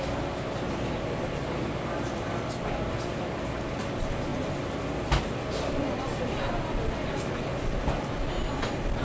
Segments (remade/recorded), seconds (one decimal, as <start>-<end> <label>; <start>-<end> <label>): 0.0-9.0 recorded